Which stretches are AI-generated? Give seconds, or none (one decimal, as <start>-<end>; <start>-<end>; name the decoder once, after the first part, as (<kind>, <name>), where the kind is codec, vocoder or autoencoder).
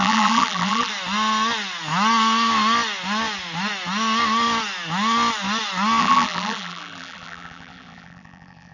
0.0-0.9 (vocoder, BigVGAN v2); 6.0-8.7